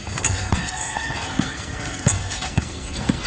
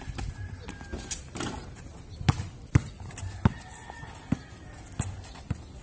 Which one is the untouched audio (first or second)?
second